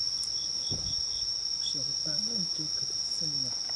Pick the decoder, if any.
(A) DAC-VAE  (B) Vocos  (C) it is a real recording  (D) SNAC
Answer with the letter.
C